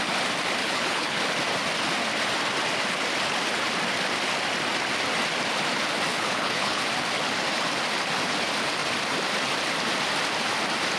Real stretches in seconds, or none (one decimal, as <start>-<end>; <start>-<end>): 0.0-0.6; 1.2-6.1; 6.8-11.0

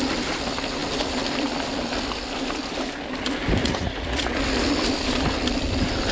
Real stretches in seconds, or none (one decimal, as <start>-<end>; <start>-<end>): 0.0-3.6; 4.4-6.1

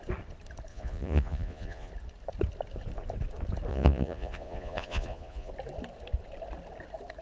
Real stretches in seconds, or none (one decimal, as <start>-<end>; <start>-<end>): 0.0-0.7; 1.9-3.7; 5.5-7.2

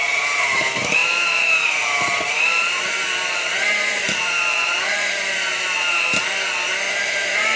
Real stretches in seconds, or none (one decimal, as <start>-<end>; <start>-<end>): none

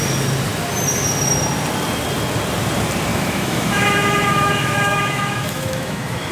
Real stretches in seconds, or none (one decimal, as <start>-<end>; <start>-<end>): 0.0-3.1